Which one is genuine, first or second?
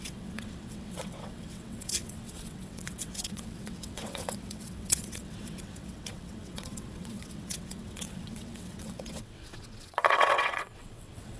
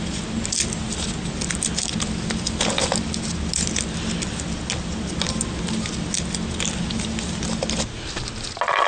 second